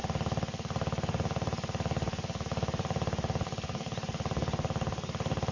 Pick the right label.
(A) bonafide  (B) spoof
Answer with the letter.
A